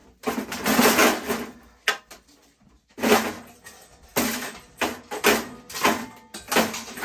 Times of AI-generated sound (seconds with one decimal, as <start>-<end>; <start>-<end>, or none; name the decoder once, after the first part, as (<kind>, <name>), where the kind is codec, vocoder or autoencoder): none